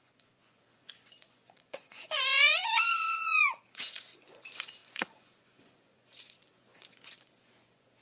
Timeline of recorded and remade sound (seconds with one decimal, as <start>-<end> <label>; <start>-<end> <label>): 0.0-8.0 remade

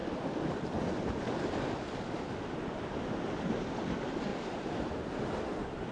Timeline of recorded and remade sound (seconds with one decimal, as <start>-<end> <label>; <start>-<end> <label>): 0.0-4.3 recorded; 4.3-5.1 remade; 5.1-5.9 recorded

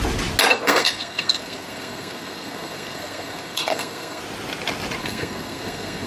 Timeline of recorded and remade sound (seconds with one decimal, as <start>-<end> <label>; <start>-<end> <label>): 0.0-0.5 recorded; 0.5-4.2 remade; 4.2-5.0 recorded; 5.0-6.1 remade

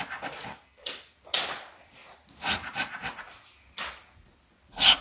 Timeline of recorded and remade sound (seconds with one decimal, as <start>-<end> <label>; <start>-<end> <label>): 0.0-0.5 recorded; 0.5-1.1 remade; 1.1-5.0 recorded

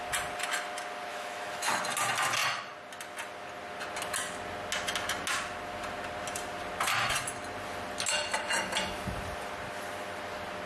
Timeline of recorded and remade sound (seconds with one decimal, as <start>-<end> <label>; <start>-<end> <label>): 0.0-1.1 recorded; 1.1-1.8 remade; 1.8-10.7 recorded